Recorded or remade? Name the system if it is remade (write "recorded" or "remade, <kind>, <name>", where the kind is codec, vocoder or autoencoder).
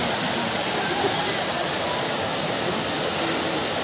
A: recorded